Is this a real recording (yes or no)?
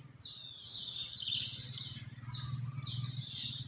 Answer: yes